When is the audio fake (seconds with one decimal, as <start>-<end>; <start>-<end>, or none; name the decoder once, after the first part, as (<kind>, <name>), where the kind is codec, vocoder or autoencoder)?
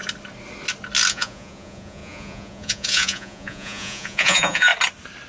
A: 1.1-4.7 (vocoder, Vocos)